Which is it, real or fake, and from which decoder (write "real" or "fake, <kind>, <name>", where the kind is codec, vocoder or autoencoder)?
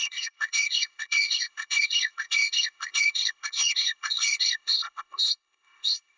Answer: fake, codec, ZipCodec